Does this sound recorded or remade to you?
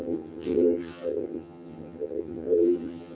remade